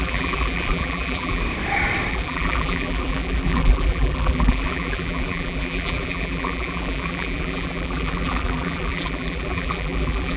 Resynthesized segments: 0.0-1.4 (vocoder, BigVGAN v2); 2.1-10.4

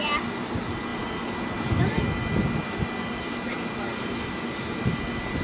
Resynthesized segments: none

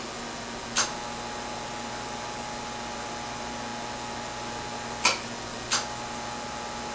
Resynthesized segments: none

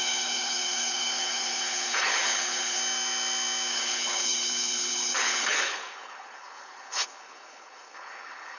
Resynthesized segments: 0.0-2.8 (codec, HILCodec); 3.7-8.6

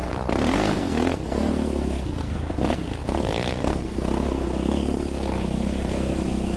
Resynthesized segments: 0.0-6.6 (codec, SNAC)

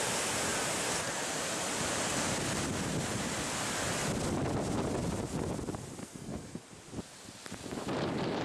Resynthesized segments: 6.0-6.6 (codec, SNAC)

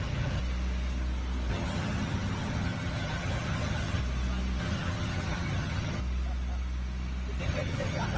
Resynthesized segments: 0.0-0.4 (vocoder, HiFi-GAN); 1.5-4.0; 4.6-6.0; 7.4-8.2